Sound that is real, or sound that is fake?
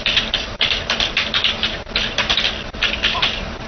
fake